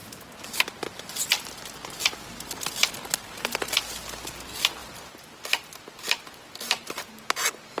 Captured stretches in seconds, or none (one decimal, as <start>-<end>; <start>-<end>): 0.0-7.8